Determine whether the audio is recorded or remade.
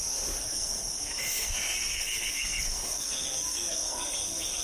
remade